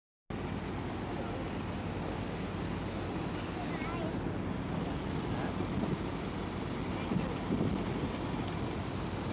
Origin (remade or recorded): recorded